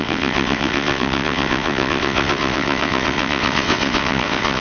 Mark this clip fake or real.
fake